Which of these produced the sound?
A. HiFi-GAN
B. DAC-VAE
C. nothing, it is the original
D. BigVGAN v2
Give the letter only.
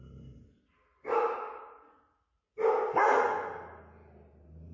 C